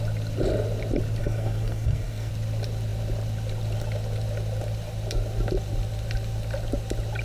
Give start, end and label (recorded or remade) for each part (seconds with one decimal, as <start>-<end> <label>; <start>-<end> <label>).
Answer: 0.0-1.2 recorded; 1.2-2.3 remade; 2.3-7.2 recorded